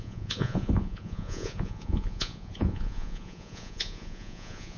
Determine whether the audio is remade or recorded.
remade